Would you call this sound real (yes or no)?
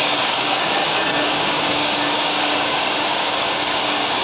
no